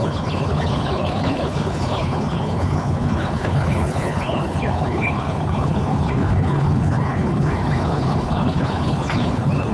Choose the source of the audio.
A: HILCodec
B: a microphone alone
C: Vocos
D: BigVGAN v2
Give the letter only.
A